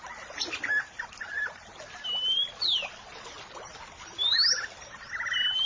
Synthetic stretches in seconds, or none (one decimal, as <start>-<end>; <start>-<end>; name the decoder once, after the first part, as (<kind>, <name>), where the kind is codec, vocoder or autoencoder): none